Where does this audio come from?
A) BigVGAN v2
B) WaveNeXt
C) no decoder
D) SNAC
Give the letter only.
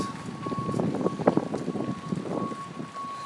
C